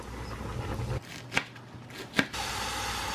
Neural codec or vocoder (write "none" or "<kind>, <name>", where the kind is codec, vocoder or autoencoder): none